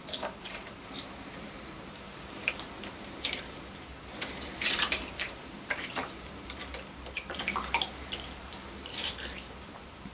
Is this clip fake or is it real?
fake